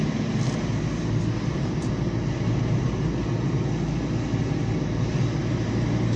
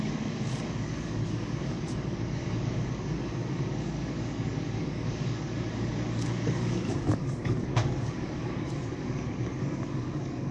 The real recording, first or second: first